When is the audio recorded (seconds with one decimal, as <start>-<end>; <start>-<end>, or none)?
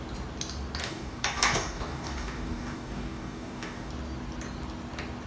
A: 0.0-0.8; 3.9-5.3